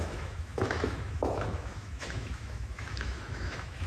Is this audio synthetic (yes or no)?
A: yes